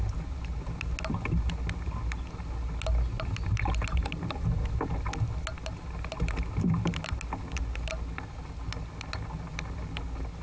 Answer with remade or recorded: recorded